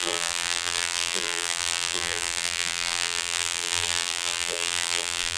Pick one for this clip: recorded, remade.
remade